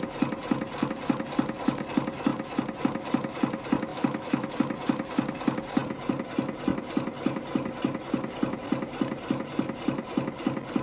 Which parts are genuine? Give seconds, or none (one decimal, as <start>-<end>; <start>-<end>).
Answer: 0.0-3.9; 4.5-10.8